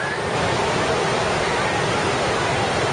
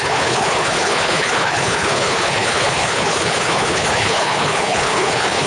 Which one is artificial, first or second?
second